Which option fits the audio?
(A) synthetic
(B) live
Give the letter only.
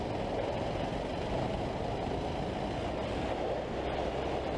B